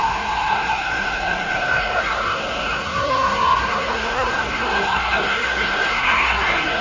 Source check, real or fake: fake